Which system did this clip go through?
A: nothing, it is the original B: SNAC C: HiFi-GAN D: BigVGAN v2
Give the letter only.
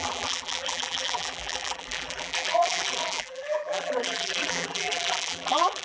D